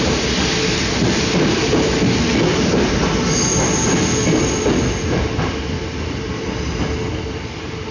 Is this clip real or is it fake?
real